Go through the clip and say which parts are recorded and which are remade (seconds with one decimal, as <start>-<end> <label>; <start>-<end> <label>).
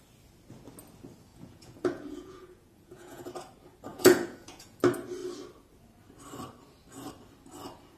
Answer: 0.0-1.3 recorded; 1.3-3.3 remade; 3.3-3.9 recorded; 3.9-4.8 remade; 4.8-8.0 recorded